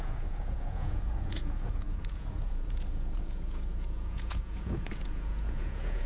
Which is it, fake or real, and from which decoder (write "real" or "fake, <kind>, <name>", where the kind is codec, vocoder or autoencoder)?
fake, vocoder, Vocos